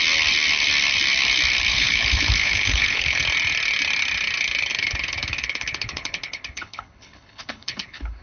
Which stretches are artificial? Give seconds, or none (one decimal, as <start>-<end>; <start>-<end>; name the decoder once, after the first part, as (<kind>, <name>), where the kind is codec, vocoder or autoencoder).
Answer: 1.7-3.2 (codec, HILCodec); 4.7-8.2